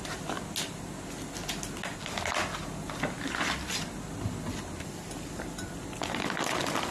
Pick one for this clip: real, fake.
real